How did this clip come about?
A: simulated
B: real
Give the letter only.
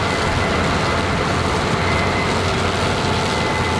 B